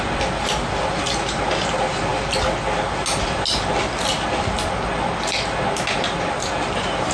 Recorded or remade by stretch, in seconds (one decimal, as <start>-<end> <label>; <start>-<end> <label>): 0.0-7.1 recorded